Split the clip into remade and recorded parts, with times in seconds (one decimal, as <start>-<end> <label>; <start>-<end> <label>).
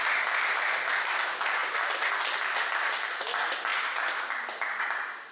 0.0-5.3 recorded